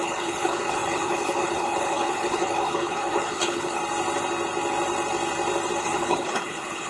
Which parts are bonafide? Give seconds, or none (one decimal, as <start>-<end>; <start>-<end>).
3.8-5.8

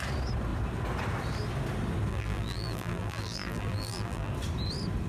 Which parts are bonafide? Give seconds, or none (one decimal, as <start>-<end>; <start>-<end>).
0.0-2.1; 4.3-5.1

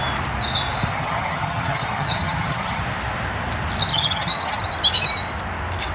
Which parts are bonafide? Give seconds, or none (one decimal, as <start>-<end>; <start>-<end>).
0.0-0.9; 2.8-3.9; 4.6-5.9

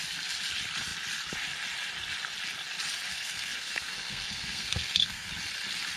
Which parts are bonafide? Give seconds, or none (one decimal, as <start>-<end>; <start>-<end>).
0.0-3.1; 5.3-6.0

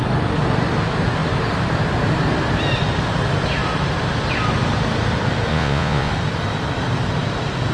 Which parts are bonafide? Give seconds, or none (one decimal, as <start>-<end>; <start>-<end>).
0.0-5.5; 6.1-7.7

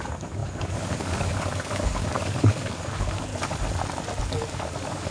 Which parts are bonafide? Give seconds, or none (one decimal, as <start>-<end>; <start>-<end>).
3.3-4.2